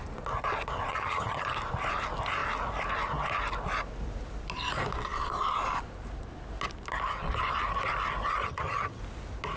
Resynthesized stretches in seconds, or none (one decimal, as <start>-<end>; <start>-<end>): 0.9-1.5; 8.4-9.0